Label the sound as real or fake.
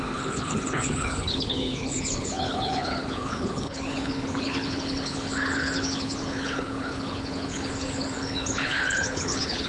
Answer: fake